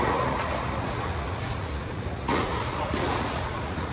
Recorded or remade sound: remade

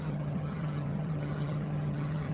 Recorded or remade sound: remade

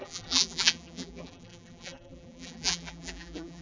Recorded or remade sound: remade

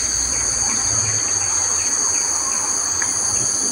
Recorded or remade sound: recorded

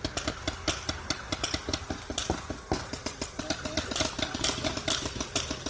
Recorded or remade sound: recorded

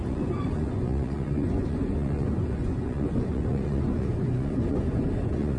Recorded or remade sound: remade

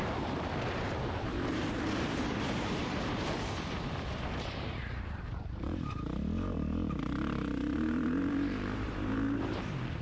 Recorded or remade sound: remade